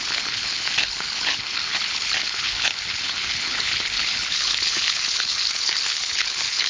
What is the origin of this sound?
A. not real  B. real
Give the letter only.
A